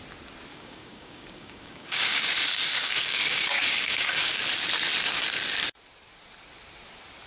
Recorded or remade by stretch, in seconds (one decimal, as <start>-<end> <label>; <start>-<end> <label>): 0.0-0.5 recorded; 0.5-4.4 remade; 4.4-7.3 recorded